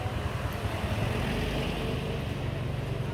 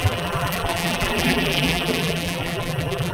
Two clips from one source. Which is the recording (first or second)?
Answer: first